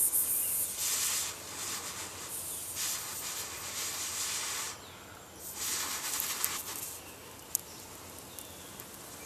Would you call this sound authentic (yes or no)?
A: yes